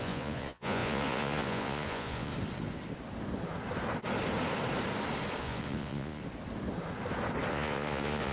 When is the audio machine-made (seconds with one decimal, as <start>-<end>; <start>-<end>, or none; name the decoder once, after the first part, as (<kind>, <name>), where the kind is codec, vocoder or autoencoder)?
0.0-2.3 (vocoder, Vocos); 5.4-6.2; 7.5-8.3